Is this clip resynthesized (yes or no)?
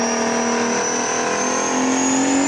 no